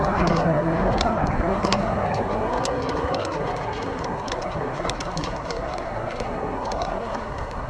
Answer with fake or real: fake